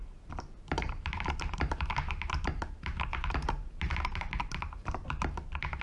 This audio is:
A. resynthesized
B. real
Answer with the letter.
A